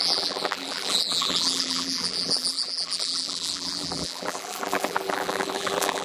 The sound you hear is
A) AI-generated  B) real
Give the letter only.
A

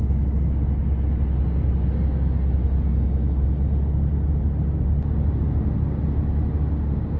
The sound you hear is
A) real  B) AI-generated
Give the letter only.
A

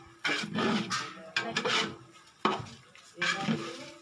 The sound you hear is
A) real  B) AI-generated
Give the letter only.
A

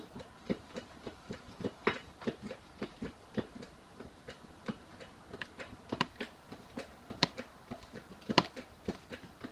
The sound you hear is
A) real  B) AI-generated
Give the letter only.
B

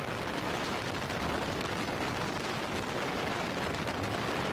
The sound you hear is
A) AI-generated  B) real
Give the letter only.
B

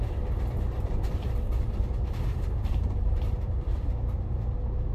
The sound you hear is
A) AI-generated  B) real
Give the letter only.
A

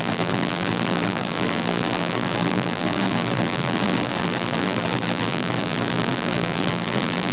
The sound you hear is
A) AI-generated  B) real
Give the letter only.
A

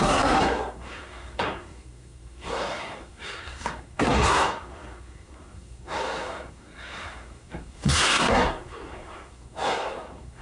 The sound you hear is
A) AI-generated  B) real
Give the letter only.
A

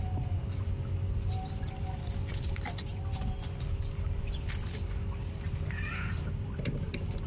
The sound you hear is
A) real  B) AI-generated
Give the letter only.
A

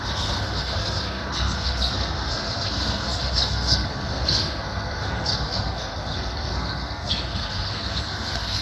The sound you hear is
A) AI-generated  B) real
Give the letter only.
A